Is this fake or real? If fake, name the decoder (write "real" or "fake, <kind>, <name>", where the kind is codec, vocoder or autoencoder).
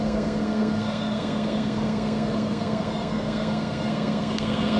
fake, codec, SNAC